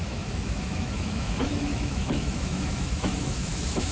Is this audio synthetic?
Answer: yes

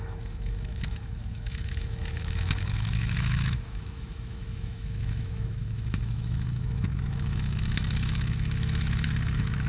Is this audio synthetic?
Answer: yes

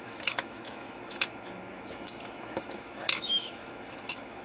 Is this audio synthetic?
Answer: yes